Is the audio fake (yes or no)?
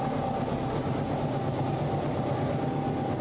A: no